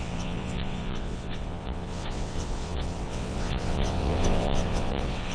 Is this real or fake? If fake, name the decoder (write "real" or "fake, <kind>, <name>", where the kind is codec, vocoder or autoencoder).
fake, vocoder, WaveNeXt